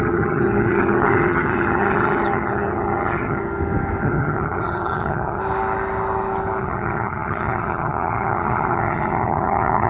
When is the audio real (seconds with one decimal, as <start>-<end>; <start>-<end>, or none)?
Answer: 3.4-4.0; 5.4-6.6